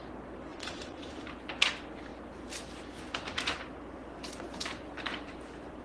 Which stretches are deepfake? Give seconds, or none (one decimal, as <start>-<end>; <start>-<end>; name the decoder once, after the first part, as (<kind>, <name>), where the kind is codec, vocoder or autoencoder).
0.5-1.2 (vocoder, Vocos)